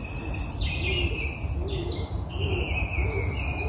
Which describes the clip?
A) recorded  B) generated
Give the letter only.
A